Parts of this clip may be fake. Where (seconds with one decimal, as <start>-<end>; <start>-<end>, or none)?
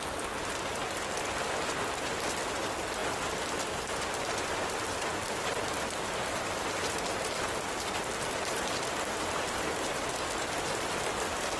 none